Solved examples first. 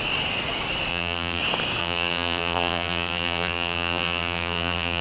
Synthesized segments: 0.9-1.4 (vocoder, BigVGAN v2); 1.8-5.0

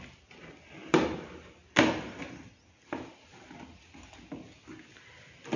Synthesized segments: none

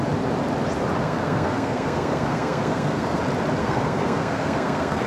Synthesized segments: 1.0-3.2 (codec, SNAC); 3.6-5.1

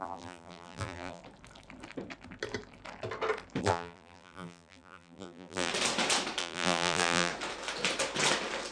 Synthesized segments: 0.0-1.2 (vocoder, BigVGAN v2); 3.6-5.7; 6.4-7.3

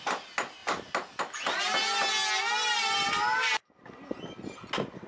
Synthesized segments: none